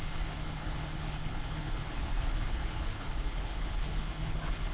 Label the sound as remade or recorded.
remade